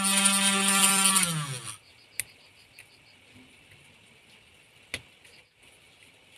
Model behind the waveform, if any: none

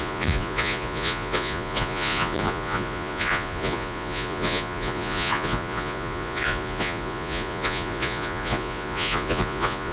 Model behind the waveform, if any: vocoder, Vocos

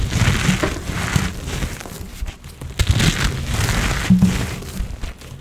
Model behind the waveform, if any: none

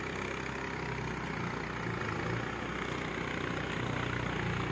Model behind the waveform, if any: none